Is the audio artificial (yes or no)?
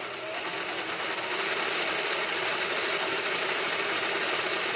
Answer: no